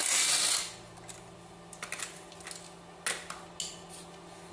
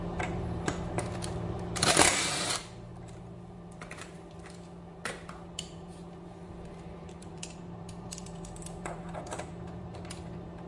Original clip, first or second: first